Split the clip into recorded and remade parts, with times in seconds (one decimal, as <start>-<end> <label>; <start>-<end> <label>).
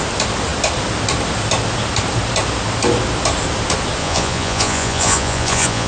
0.0-4.0 recorded; 4.0-5.9 remade